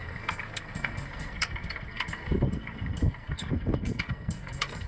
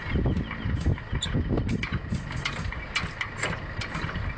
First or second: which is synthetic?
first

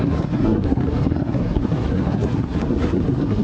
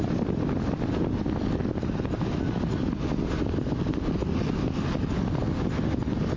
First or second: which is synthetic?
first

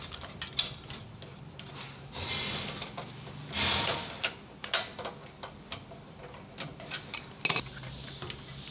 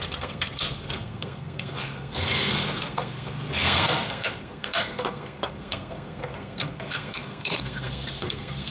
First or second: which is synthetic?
second